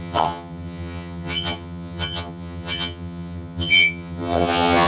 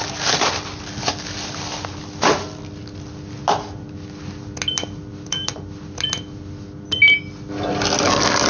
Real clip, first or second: second